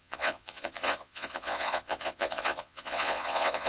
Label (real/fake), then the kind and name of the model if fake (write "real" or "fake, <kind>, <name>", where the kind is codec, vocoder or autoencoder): fake, vocoder, Vocos